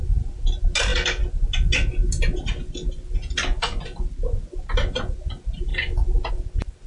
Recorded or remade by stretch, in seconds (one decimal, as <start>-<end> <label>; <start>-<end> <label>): 0.0-6.9 recorded